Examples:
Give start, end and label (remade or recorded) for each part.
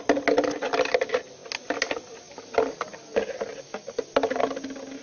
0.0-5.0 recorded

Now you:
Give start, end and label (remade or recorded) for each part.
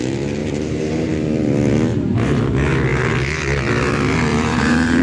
0.0-0.4 recorded; 0.4-1.1 remade; 1.1-1.9 recorded; 1.9-2.4 remade; 2.4-4.3 recorded; 4.3-5.0 remade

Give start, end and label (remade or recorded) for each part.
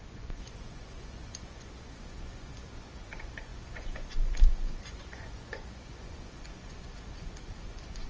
0.0-8.1 remade